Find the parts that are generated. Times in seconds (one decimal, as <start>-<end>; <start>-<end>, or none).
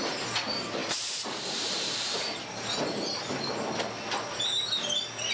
none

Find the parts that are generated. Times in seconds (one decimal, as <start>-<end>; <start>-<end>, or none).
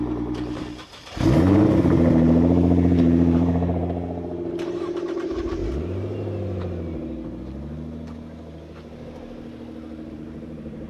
0.0-5.6; 10.1-10.9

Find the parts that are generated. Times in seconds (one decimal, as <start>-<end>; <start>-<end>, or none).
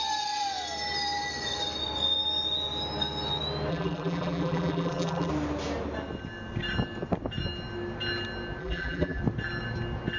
3.7-5.3; 8.6-9.2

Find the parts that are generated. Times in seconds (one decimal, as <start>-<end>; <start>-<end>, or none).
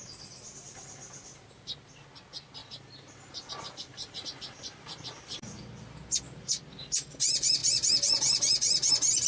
2.6-4.6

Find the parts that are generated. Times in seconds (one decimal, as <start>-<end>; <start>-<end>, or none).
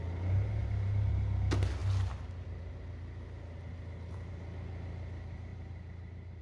0.6-1.1; 5.5-6.4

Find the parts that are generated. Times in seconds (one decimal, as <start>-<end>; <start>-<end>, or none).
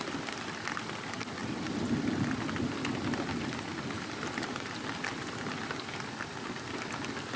none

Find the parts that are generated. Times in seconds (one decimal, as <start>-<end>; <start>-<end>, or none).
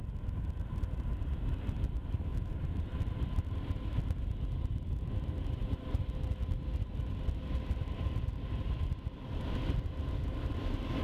2.3-3.1